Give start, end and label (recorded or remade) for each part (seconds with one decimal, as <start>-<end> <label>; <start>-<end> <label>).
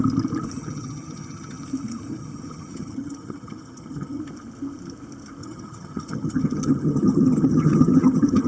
0.0-0.6 recorded; 0.6-1.6 remade; 1.6-2.1 recorded; 2.1-4.2 remade; 4.2-5.4 recorded; 5.4-8.5 remade